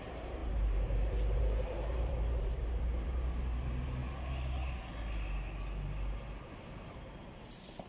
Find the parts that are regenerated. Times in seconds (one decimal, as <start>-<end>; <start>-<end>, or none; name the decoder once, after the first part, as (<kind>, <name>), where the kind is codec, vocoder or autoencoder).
0.0-4.0 (vocoder, BigVGAN v2); 6.8-7.9